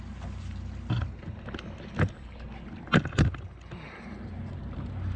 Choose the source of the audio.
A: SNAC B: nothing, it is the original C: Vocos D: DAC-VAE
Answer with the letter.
B